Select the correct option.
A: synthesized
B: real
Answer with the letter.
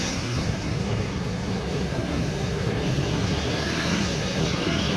A